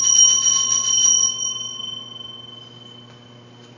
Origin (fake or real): real